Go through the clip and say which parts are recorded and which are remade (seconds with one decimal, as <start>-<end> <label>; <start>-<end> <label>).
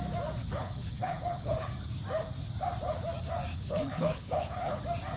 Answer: 0.0-0.4 recorded; 0.4-1.7 remade; 1.7-3.5 recorded; 3.5-4.8 remade; 4.8-5.2 recorded